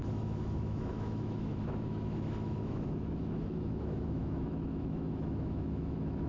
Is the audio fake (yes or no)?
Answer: yes